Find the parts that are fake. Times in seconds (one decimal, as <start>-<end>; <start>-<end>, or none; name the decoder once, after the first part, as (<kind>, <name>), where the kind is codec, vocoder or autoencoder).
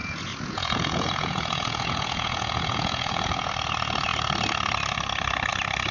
0.0-3.5 (vocoder, Vocos)